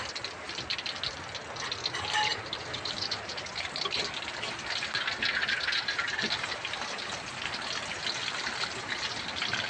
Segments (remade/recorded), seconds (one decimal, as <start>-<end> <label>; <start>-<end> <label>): 0.0-2.3 recorded; 2.3-4.0 remade; 4.0-5.4 recorded; 5.4-7.0 remade; 7.0-9.7 recorded